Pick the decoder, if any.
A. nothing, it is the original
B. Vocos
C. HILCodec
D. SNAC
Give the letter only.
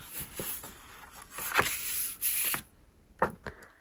A